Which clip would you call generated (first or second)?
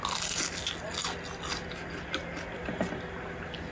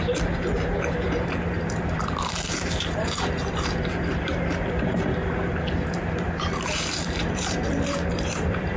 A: second